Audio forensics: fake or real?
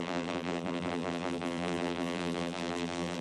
fake